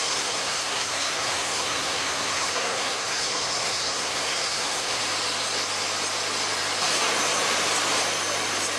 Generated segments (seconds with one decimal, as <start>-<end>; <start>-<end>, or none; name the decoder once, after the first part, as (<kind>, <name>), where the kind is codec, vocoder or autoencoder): 0.0-5.0 (codec, SNAC)